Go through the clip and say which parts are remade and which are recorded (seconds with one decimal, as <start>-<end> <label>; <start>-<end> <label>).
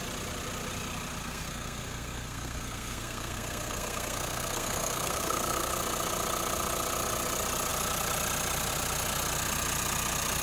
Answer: 0.0-1.2 recorded; 1.2-5.7 remade; 5.7-10.4 recorded